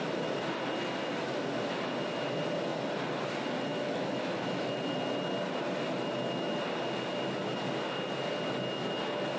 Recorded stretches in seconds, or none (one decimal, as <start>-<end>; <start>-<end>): 0.0-3.7; 4.7-9.4

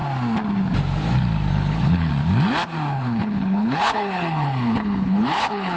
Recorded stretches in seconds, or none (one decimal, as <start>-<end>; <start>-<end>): 0.0-1.5; 2.1-2.9